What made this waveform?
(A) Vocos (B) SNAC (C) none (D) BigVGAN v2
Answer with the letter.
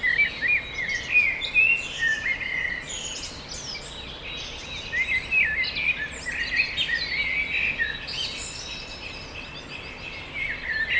C